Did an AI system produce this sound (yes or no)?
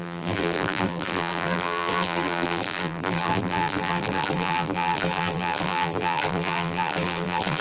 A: yes